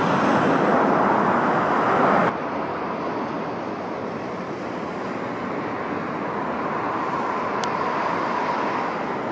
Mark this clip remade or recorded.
recorded